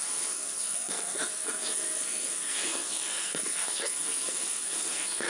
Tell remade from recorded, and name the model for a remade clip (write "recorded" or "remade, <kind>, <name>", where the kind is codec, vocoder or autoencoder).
remade, codec, SNAC